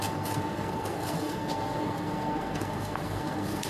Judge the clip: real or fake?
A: fake